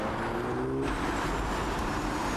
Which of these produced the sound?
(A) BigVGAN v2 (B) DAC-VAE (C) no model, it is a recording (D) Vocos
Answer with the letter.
C